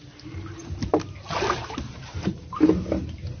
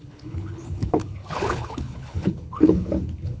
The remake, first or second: second